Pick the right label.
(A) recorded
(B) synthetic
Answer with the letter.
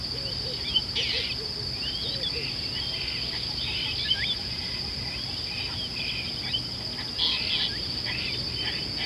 A